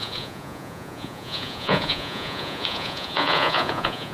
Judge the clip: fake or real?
fake